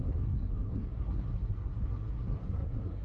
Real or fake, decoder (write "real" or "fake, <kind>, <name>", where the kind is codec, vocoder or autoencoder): fake, codec, SNAC